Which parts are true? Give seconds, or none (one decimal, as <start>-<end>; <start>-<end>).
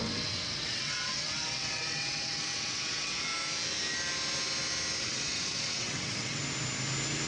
3.3-5.0; 6.4-7.3